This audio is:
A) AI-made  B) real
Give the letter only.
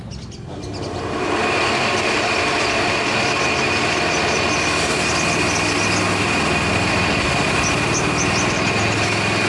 B